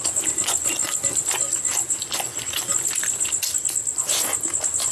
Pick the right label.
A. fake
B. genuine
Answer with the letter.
B